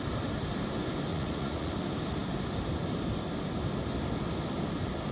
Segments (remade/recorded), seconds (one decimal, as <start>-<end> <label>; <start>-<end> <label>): 0.0-1.1 recorded; 1.1-1.7 remade; 1.7-5.1 recorded